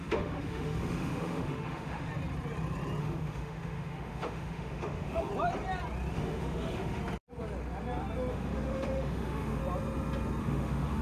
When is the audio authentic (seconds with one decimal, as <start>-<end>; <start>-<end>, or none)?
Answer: 2.1-3.0; 5.3-6.1; 7.0-8.3; 9.6-10.4